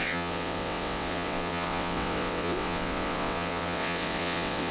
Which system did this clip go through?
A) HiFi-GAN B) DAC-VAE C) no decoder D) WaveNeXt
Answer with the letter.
D